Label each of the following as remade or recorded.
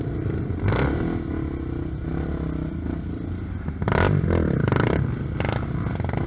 recorded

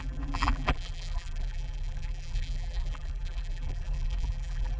remade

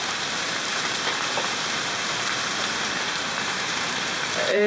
remade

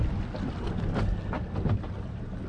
recorded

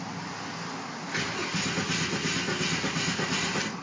recorded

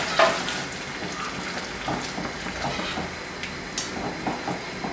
recorded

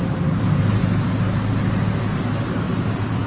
recorded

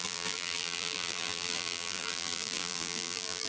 remade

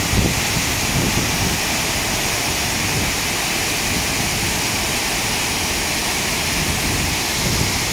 recorded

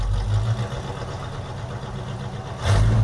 recorded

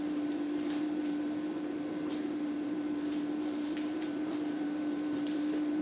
remade